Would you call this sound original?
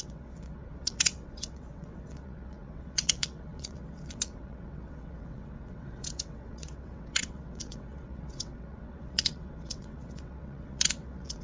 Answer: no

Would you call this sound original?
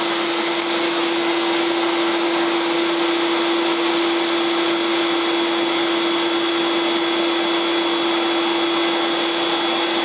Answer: yes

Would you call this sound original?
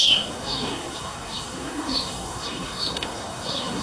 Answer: no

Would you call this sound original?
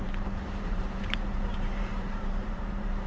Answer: no